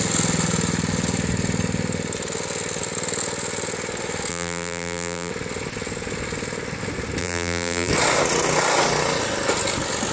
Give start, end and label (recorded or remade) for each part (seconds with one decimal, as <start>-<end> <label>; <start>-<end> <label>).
0.0-4.3 recorded; 4.3-5.3 remade; 5.3-7.2 recorded; 7.2-7.9 remade; 7.9-10.1 recorded